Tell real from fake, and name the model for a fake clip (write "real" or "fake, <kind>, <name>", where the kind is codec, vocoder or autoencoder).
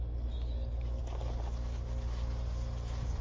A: real